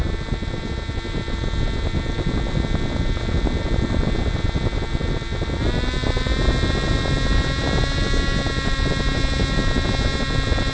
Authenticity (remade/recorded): recorded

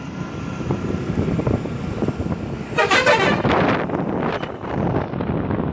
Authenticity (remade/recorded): recorded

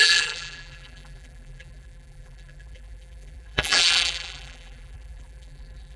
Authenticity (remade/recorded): remade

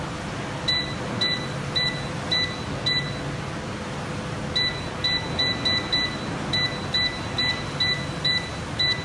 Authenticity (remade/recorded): recorded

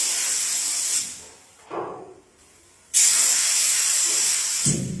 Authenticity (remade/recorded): recorded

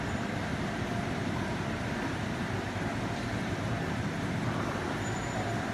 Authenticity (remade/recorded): remade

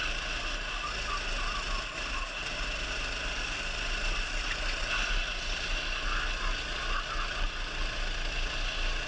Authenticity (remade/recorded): recorded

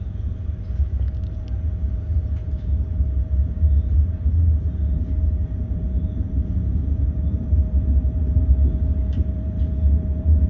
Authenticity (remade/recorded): remade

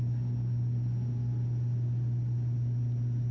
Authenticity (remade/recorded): recorded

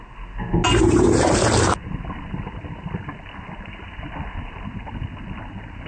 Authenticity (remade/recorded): recorded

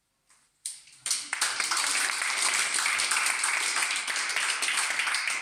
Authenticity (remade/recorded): remade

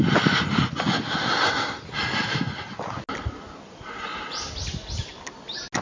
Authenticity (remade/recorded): recorded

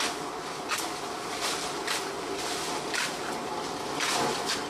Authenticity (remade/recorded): recorded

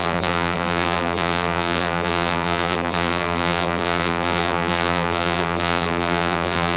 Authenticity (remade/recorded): remade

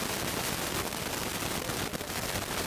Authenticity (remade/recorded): recorded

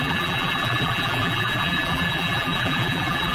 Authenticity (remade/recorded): remade